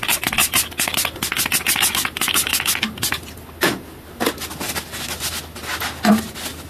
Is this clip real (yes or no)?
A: yes